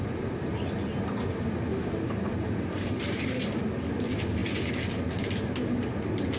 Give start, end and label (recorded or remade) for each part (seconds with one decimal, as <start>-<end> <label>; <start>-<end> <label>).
0.0-1.7 recorded; 1.7-3.4 remade; 3.4-6.4 recorded